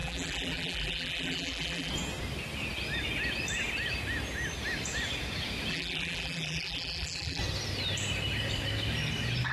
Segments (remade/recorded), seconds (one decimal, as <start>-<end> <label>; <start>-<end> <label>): 0.0-1.9 remade; 1.9-5.7 recorded; 5.7-7.4 remade; 7.4-9.5 recorded